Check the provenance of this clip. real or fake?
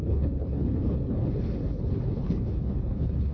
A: fake